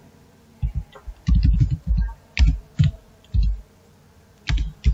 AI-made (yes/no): no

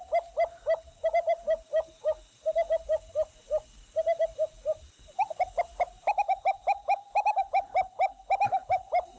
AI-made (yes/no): no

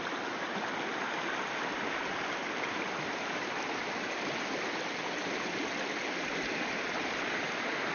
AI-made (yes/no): no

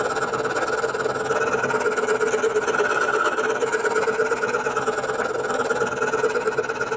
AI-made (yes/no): no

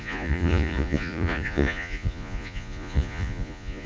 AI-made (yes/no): yes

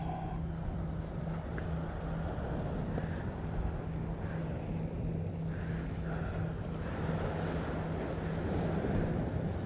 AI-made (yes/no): no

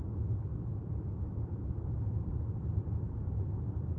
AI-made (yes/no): no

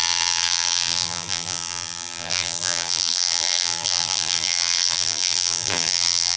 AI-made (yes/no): yes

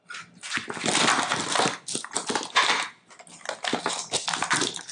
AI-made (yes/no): no